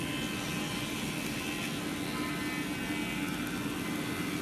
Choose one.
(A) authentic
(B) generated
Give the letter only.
A